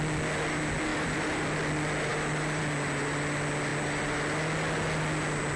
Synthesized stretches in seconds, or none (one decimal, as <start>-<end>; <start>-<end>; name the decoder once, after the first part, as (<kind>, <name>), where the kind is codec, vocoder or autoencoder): 0.9-1.7 (vocoder, BigVGAN v2)